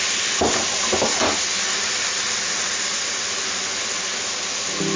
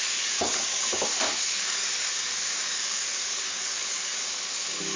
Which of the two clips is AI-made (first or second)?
second